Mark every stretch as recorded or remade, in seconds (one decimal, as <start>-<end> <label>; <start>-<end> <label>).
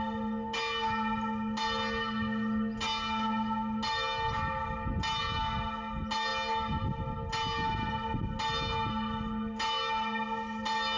0.0-11.0 recorded